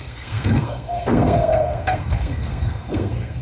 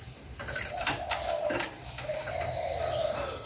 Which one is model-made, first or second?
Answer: first